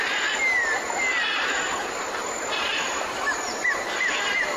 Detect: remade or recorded recorded